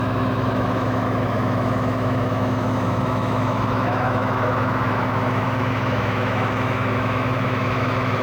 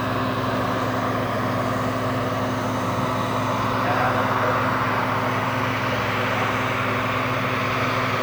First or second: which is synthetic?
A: first